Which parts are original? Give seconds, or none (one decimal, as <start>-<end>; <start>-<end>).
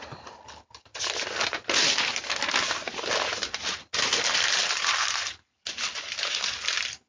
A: 0.0-7.1